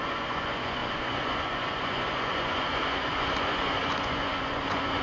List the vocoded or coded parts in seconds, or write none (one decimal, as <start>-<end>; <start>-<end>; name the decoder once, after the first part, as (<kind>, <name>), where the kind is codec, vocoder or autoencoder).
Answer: 0.0-5.0 (vocoder, Vocos)